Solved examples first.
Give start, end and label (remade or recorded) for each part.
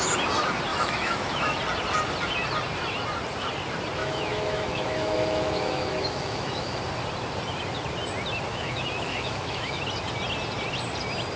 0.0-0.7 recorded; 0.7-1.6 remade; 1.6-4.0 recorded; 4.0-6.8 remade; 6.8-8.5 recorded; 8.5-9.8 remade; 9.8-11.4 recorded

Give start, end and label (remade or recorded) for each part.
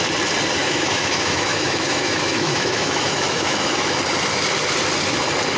0.0-0.6 recorded; 0.6-4.0 remade; 4.0-5.6 recorded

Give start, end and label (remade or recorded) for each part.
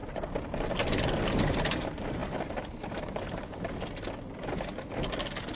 0.0-5.6 recorded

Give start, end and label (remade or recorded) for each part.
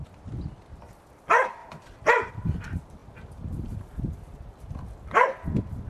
0.0-1.6 recorded; 1.6-2.3 remade; 2.3-3.0 recorded; 3.0-3.8 remade; 3.8-5.9 recorded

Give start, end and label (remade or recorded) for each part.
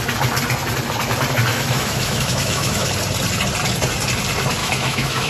0.0-1.5 recorded; 1.5-2.9 remade; 2.9-4.6 recorded; 4.6-5.3 remade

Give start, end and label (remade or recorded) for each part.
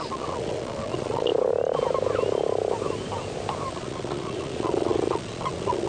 0.0-1.3 remade; 1.3-3.7 recorded; 3.7-5.9 remade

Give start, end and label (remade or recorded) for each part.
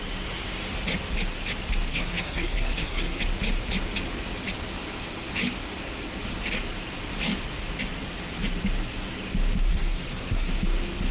0.0-1.9 recorded; 1.9-3.2 remade; 3.2-9.7 recorded; 9.7-10.5 remade; 10.5-11.1 recorded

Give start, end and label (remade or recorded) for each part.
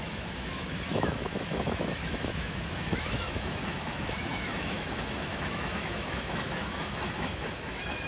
0.0-8.1 remade